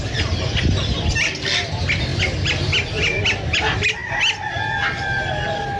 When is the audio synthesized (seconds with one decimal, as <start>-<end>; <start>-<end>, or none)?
none